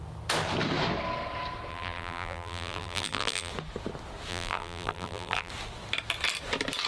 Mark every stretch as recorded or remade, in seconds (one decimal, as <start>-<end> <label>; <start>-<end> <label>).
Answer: 0.0-1.7 recorded; 1.7-3.5 remade; 3.5-4.3 recorded; 4.3-5.5 remade; 5.5-6.9 recorded